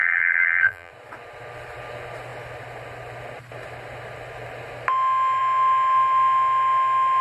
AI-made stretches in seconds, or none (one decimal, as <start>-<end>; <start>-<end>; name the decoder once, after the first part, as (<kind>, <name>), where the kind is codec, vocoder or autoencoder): 0.0-0.9 (vocoder, BigVGAN v2)